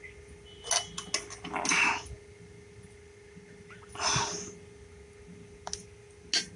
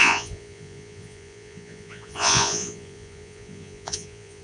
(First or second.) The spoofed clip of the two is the second